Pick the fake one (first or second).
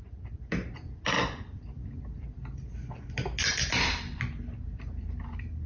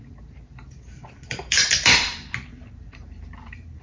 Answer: second